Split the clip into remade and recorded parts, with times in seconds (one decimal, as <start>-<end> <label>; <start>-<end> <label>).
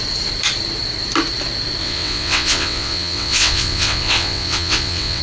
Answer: 0.0-1.8 recorded; 1.8-5.2 remade